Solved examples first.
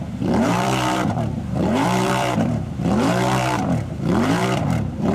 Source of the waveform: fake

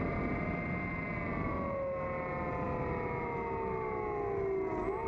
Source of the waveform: real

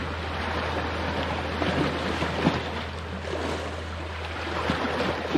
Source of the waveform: real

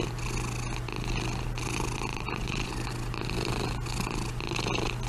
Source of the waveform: real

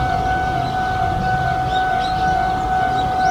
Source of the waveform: real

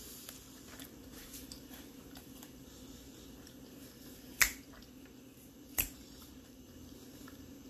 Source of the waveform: fake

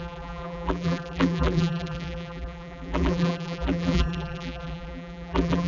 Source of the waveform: fake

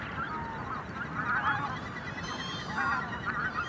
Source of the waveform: fake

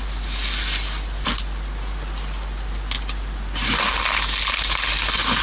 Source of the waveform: real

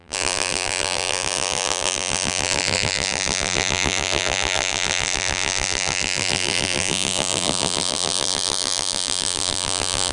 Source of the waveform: fake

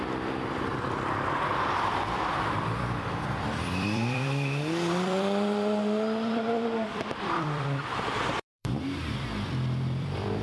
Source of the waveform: fake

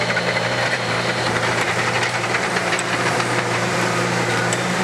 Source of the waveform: fake